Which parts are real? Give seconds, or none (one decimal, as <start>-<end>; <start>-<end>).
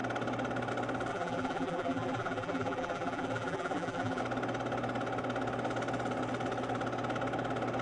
0.0-1.1; 4.2-7.8